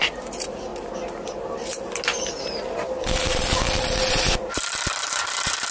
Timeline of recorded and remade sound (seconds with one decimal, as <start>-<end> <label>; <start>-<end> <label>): 0.0-0.7 remade; 0.7-4.1 recorded; 4.1-5.7 remade